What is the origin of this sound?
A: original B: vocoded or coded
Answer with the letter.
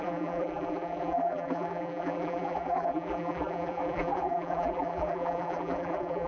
B